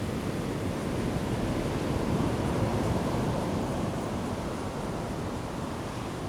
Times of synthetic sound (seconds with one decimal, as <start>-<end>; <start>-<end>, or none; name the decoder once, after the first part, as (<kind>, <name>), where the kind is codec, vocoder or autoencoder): 0.8-2.3 (vocoder, BigVGAN v2); 2.7-3.9